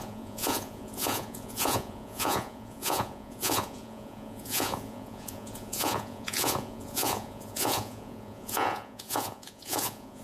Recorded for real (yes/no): no